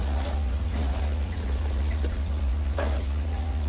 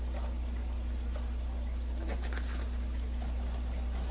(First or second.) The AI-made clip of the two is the first